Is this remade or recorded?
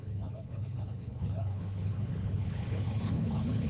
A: remade